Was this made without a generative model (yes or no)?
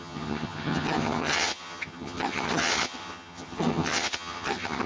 no